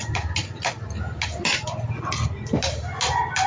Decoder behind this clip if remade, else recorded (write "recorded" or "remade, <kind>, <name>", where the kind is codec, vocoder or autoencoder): recorded